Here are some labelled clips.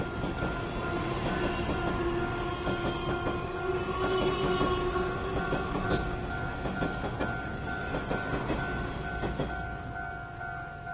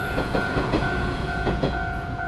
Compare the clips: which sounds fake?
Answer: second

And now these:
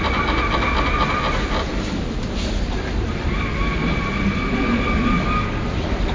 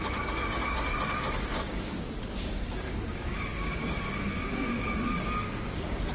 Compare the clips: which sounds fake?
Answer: second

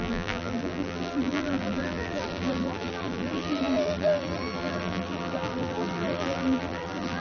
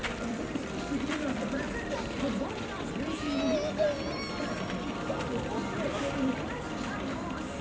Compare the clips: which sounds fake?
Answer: first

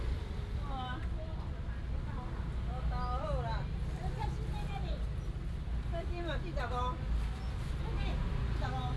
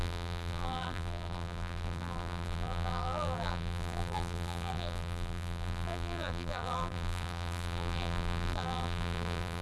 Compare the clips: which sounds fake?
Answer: second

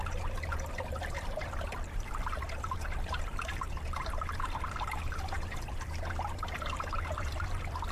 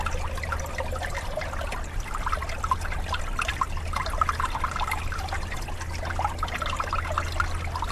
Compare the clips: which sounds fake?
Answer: first